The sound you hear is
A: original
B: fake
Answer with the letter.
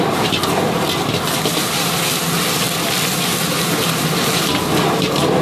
A